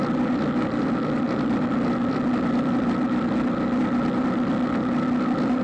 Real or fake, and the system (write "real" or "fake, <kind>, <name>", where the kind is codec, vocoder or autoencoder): real